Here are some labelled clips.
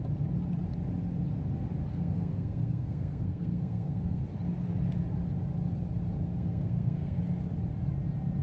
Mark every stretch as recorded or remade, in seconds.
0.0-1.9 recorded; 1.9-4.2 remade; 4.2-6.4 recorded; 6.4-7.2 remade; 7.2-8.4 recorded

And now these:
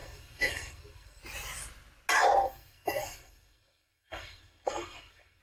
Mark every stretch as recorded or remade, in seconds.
0.0-1.2 remade; 1.2-2.4 recorded; 2.4-5.4 remade